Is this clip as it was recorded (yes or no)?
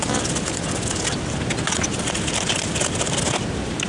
yes